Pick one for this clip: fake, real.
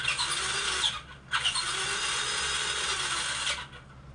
real